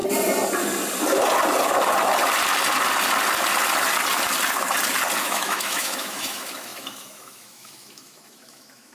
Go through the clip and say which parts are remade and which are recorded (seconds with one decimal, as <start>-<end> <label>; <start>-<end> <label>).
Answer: 0.0-5.2 recorded; 5.2-8.9 remade